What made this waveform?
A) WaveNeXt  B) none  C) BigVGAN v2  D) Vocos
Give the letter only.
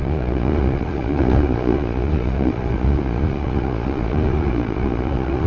D